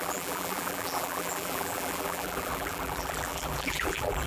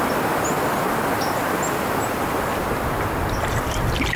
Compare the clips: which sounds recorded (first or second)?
second